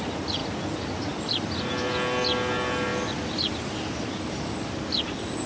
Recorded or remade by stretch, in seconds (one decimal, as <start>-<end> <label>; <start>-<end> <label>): 0.0-0.4 recorded; 0.4-1.1 remade; 1.1-2.9 recorded; 2.9-3.5 remade; 3.5-5.5 recorded